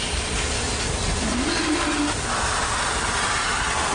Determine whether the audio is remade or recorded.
recorded